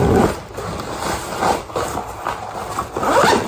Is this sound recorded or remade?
recorded